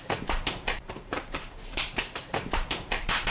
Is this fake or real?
fake